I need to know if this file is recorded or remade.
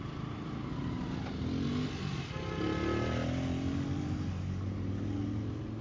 recorded